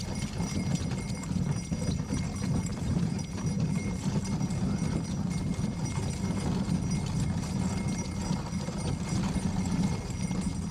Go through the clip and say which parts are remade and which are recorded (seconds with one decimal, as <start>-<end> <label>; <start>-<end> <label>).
0.0-2.7 recorded; 2.7-3.2 remade; 3.2-10.7 recorded